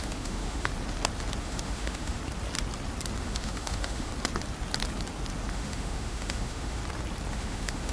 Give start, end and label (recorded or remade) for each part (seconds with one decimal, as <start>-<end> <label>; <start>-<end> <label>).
0.0-0.7 remade; 0.7-1.4 recorded; 1.4-2.2 remade; 2.2-3.2 recorded; 3.2-4.1 remade; 4.1-5.5 recorded; 5.5-6.8 remade; 6.8-7.3 recorded; 7.3-7.9 remade